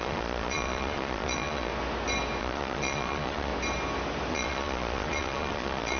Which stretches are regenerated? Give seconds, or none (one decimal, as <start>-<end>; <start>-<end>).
0.0-1.7; 2.4-3.5; 4.3-6.0